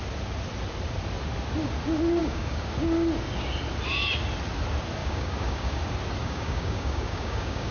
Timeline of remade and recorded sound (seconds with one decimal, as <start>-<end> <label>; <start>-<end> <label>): 0.0-2.2 recorded; 2.2-2.7 remade; 2.7-5.0 recorded; 5.0-5.8 remade; 5.8-6.2 recorded; 6.2-7.7 remade